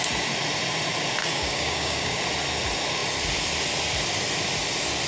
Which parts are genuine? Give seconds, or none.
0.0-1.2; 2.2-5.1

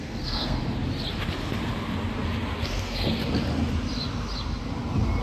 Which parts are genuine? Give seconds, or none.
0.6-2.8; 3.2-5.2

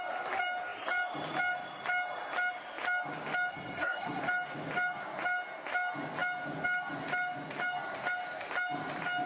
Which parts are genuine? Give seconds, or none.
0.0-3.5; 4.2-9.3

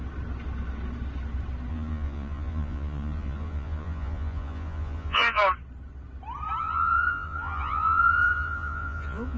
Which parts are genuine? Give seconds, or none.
0.0-1.7; 5.4-6.6